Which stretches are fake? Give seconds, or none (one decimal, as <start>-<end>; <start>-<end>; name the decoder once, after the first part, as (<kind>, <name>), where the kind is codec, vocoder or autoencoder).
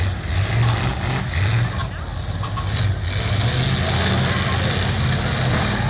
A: none